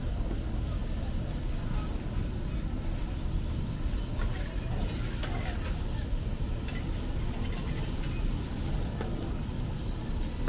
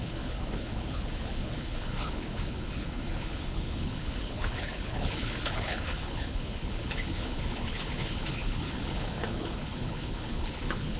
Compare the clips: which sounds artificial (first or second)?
second